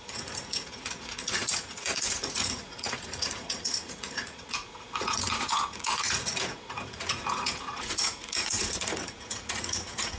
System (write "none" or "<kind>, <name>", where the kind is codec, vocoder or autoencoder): vocoder, Vocos